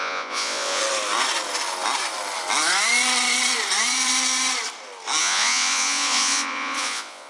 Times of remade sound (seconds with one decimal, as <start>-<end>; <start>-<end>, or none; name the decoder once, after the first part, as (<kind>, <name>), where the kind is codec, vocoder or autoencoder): 0.0-0.8 (vocoder, Vocos); 5.2-7.3